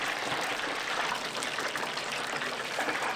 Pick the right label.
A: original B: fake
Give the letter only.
B